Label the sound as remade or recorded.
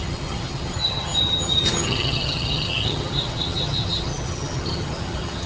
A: remade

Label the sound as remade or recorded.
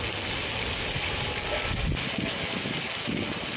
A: recorded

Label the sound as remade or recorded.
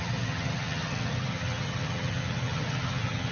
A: remade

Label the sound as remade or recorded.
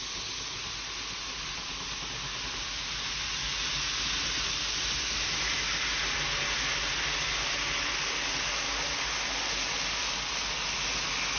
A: recorded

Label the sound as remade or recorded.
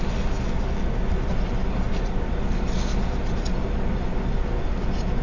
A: recorded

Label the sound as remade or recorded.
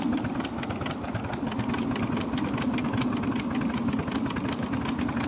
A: recorded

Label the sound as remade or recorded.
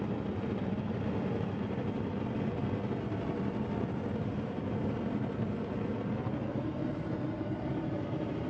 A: recorded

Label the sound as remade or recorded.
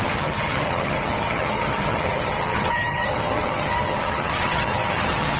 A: remade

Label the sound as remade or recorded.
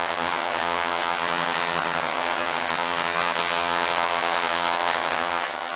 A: remade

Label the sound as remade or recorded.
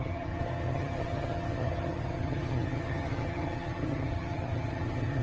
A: remade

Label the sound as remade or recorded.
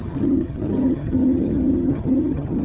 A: remade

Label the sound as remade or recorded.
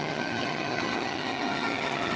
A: remade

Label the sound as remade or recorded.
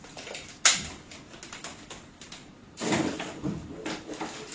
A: recorded